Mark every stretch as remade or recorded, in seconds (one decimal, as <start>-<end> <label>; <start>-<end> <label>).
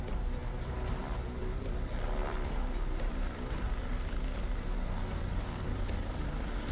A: 0.0-2.2 recorded; 2.2-6.2 remade; 6.2-6.7 recorded